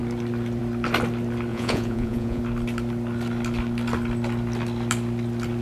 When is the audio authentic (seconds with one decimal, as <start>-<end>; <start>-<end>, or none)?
0.0-1.5; 2.4-5.6